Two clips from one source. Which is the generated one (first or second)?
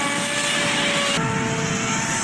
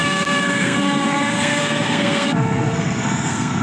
second